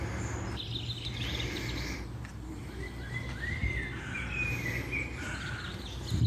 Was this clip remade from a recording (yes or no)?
no